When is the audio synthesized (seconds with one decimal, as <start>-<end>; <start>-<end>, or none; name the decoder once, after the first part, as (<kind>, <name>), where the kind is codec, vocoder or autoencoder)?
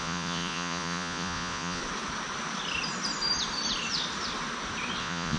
0.0-1.8 (vocoder, Vocos); 5.0-5.4